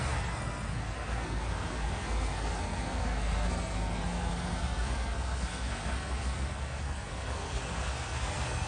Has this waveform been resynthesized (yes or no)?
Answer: yes